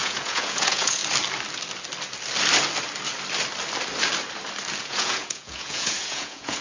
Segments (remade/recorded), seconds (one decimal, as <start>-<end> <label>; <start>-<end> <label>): 0.0-1.0 remade; 1.0-4.8 recorded; 4.8-6.6 remade